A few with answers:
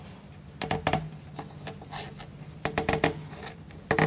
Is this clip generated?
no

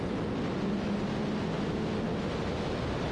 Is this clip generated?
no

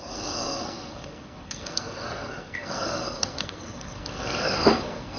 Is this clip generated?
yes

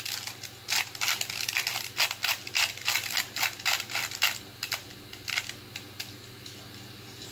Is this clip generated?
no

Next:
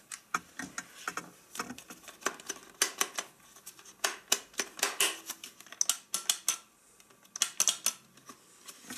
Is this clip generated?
no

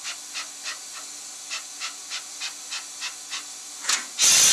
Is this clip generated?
no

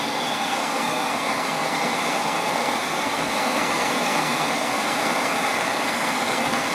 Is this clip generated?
yes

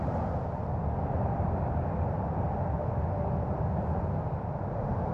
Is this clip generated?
no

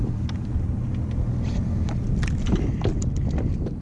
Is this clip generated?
no